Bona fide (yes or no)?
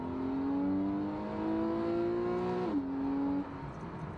yes